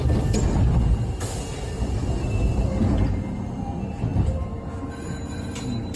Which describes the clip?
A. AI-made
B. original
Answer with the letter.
B